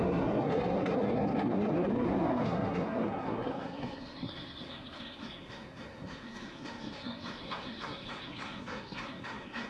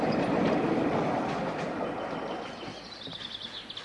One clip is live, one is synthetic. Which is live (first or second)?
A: second